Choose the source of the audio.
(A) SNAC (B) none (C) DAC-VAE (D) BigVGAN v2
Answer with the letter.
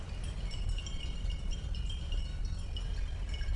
B